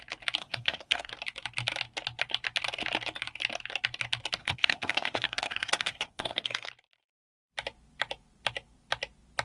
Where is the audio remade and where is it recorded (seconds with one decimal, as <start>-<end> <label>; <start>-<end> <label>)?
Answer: 0.0-0.4 recorded; 0.4-1.1 remade; 1.1-4.4 recorded; 4.4-6.7 remade; 6.7-9.4 recorded